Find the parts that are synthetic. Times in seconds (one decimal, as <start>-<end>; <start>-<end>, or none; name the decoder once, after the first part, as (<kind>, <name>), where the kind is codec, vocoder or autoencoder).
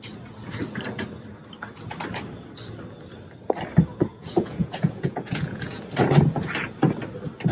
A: 3.9-5.8 (vocoder, Vocos)